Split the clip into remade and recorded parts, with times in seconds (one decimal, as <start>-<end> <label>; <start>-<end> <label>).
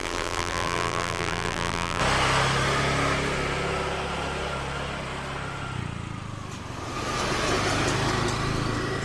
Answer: 0.0-2.0 remade; 2.0-9.0 recorded